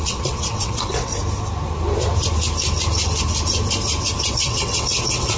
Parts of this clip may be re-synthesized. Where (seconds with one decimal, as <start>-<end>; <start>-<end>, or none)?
0.0-1.1; 4.3-5.4